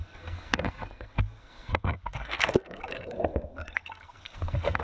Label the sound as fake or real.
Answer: fake